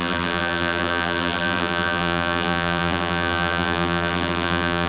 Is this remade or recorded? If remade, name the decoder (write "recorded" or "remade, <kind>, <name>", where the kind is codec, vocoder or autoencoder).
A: remade, vocoder, BigVGAN v2